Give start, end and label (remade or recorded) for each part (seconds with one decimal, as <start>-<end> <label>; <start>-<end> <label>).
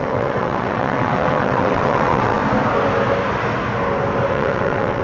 0.0-2.4 remade; 2.4-4.3 recorded; 4.3-5.0 remade